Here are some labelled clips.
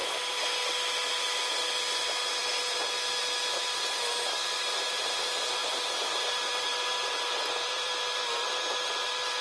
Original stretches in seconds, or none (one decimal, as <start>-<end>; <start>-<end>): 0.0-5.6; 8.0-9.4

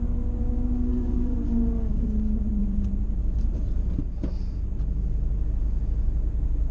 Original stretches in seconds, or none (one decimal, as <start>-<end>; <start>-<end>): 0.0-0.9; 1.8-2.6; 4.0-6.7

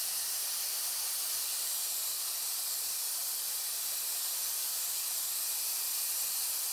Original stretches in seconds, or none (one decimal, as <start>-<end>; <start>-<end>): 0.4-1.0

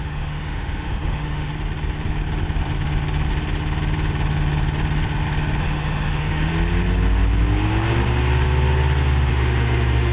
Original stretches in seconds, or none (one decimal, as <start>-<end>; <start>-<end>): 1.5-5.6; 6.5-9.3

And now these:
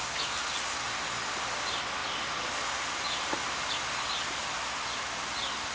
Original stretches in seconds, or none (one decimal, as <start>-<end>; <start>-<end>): 0.0-5.7

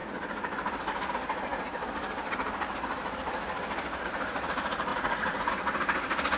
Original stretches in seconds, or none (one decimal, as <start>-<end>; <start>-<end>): 0.0-4.9; 5.5-6.4